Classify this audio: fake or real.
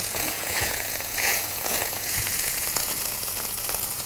fake